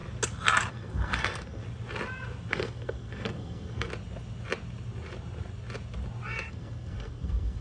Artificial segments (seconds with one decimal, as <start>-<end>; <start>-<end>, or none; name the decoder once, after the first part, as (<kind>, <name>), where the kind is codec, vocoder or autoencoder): 0.7-1.6 (codec, SNAC); 2.5-3.9; 6.5-7.6